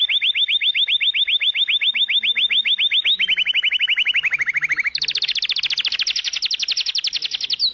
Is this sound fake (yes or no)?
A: no